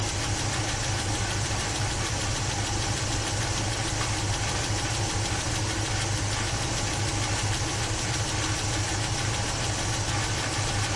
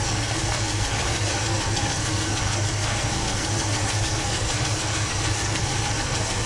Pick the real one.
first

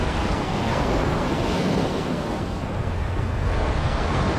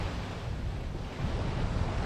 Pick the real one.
second